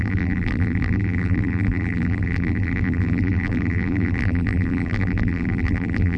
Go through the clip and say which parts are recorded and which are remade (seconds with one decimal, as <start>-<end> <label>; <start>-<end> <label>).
0.0-6.2 remade